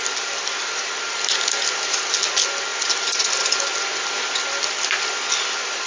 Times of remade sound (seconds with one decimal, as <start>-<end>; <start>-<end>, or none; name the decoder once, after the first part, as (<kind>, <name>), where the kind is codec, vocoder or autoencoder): none